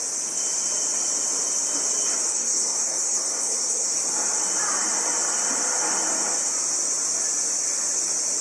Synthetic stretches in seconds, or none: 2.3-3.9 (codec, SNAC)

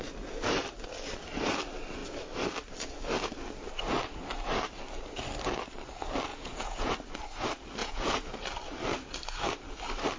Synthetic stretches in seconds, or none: 6.3-6.9 (vocoder, Vocos); 7.8-8.3

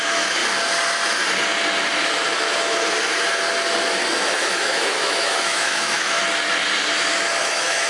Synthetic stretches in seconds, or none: 0.0-0.4 (autoencoder, DAC-VAE); 4.3-6.2; 7.4-7.9

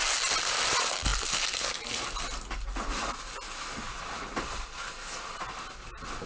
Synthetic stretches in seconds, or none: none

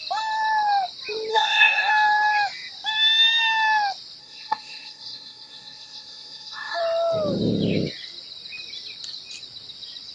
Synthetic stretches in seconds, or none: 1.3-1.9 (codec, SNAC); 4.2-6.8